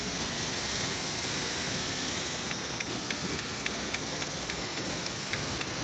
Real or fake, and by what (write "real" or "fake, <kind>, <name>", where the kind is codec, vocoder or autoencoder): fake, codec, SNAC